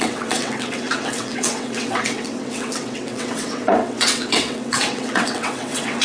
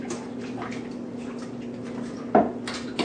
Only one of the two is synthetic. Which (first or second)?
first